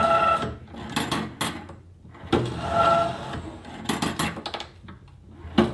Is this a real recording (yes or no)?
yes